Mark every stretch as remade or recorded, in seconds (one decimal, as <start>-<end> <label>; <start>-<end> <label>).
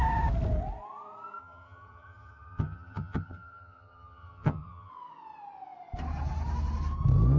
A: 0.0-1.4 recorded; 1.4-4.9 remade; 4.9-7.4 recorded